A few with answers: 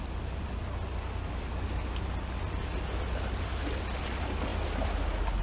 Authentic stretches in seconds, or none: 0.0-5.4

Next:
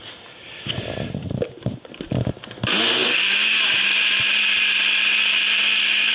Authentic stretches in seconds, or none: 0.0-6.1

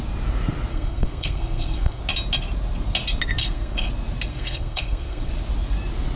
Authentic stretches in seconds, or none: 0.0-0.7; 2.0-3.4; 3.9-4.3; 5.3-6.2

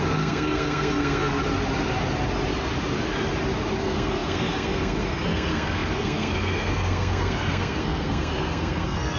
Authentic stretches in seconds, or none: 1.4-3.8

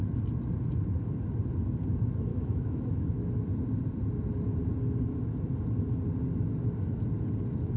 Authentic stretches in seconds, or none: 0.0-2.3; 3.3-7.8